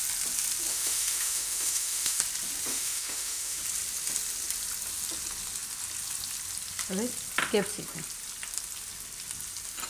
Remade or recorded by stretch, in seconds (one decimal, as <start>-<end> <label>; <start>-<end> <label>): 0.0-0.7 recorded; 0.7-2.2 remade; 2.2-2.7 recorded; 2.7-3.6 remade; 3.6-9.9 recorded